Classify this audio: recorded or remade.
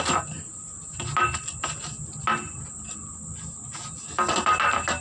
recorded